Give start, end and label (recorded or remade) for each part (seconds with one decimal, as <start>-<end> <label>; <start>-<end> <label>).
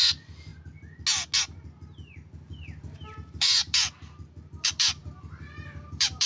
0.0-0.5 remade; 0.5-2.8 recorded; 2.8-6.3 remade